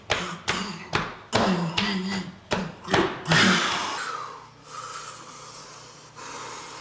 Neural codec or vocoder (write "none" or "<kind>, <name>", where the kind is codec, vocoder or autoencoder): none